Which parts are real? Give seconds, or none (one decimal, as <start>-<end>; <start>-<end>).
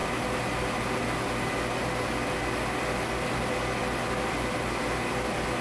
0.0-5.6